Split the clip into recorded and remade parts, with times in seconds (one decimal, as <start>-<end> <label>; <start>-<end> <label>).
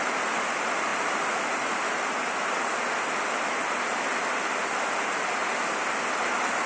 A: 0.0-6.7 recorded